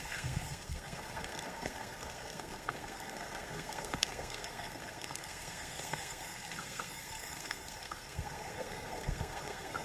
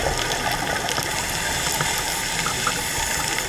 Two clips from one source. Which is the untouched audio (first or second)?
second